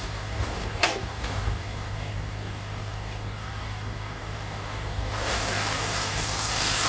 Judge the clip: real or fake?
fake